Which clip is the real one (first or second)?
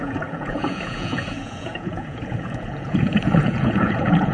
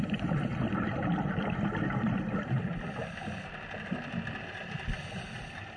second